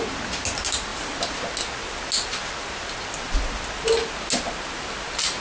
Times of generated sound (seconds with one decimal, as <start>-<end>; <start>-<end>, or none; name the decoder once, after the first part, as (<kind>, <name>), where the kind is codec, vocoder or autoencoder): none